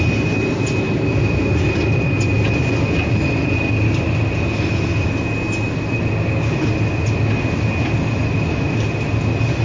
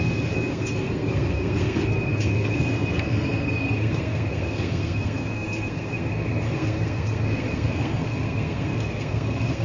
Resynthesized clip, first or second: second